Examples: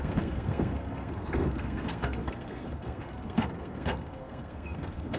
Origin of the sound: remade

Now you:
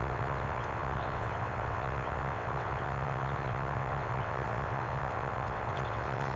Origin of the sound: remade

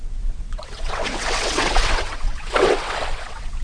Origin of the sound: remade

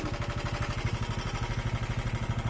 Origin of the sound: recorded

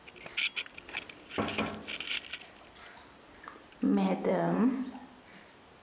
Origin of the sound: recorded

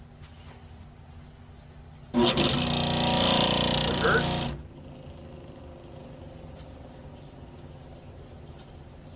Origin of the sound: recorded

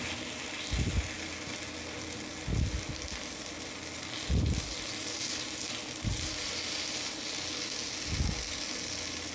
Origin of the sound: recorded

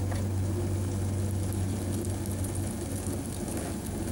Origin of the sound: recorded